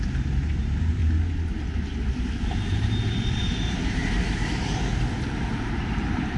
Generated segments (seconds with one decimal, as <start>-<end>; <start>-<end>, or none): 0.0-1.0; 2.2-6.4